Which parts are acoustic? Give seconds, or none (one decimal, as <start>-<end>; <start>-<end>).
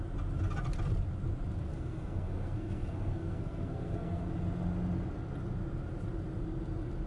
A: 0.0-1.7; 4.3-7.1